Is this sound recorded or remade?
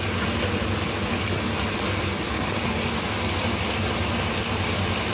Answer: recorded